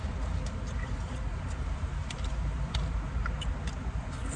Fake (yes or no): no